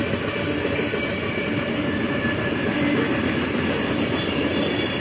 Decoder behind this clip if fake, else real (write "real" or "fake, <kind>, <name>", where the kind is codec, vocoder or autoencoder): real